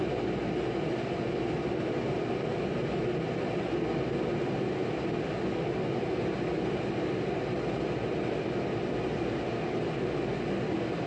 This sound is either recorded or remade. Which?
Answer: recorded